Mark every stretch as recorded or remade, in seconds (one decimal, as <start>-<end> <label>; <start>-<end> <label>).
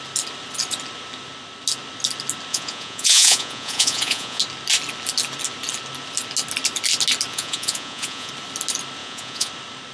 0.0-2.5 recorded; 2.5-4.4 remade; 4.4-7.3 recorded; 7.3-8.3 remade; 8.3-9.0 recorded; 9.0-9.5 remade; 9.5-9.9 recorded